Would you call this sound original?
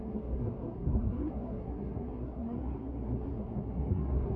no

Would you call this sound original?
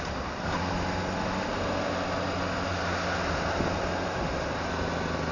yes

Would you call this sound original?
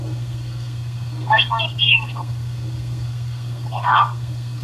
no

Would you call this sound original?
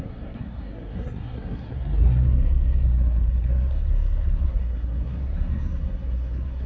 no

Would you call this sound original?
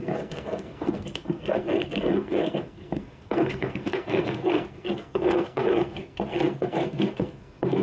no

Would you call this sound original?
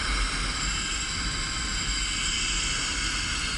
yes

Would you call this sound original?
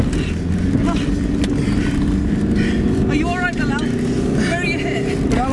yes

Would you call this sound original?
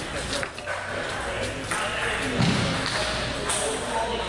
yes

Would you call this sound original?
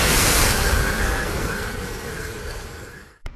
no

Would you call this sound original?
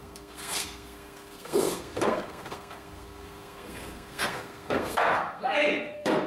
no